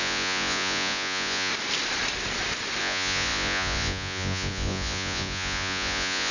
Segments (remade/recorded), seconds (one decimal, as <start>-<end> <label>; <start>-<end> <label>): 0.0-1.5 remade; 1.5-2.8 recorded; 2.8-6.3 remade